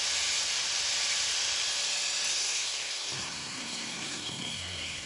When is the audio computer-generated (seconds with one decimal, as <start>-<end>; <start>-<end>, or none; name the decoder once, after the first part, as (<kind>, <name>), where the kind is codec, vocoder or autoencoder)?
2.3-5.1 (codec, SNAC)